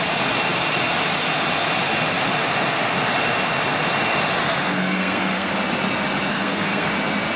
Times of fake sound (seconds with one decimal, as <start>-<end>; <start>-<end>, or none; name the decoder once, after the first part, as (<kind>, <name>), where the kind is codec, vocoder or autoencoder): 4.4-5.5 (codec, SNAC); 6.3-6.9